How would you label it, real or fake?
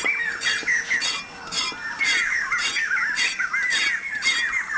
real